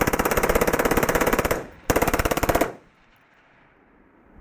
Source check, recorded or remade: remade